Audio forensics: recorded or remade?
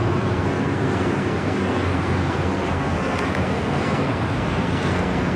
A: remade